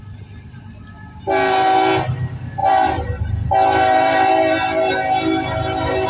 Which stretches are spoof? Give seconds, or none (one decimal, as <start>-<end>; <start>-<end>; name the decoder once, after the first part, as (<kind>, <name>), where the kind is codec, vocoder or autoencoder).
2.6-4.9 (vocoder, BigVGAN v2)